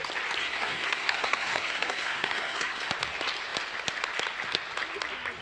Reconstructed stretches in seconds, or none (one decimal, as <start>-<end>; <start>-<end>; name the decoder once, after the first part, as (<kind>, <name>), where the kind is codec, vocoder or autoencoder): 0.4-2.9 (codec, SNAC)